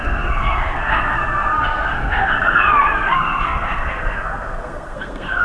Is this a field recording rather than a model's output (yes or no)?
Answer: no